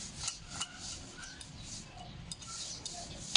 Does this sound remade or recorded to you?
recorded